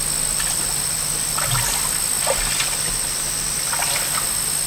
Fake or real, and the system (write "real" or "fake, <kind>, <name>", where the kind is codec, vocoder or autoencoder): real